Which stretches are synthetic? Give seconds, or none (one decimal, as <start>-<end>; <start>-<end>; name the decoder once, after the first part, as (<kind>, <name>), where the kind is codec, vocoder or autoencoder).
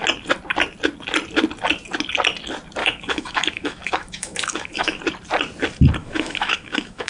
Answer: 2.8-5.0 (autoencoder, DAC-VAE); 6.0-7.1